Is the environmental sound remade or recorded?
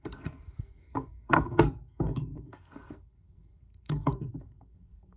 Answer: remade